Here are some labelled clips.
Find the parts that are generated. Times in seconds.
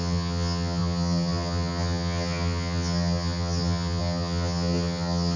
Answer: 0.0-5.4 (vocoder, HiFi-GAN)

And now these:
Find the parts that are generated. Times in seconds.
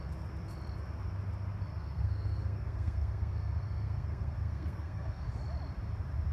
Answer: 1.7-5.3 (codec, SNAC)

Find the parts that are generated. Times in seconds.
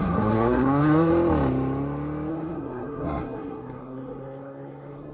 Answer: 0.0-1.1 (codec, SNAC); 2.3-5.1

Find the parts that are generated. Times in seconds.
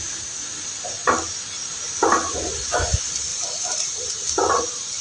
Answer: 0.0-1.0 (vocoder, BigVGAN v2); 1.7-5.0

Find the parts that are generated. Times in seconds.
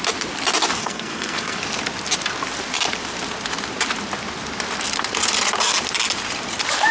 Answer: 0.8-1.6 (codec, SNAC)